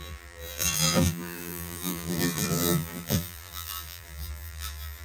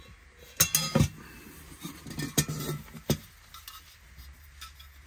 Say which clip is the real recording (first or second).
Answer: second